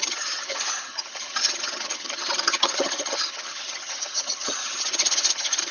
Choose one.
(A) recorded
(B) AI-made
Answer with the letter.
B